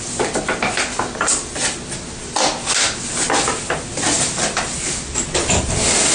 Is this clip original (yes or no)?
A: yes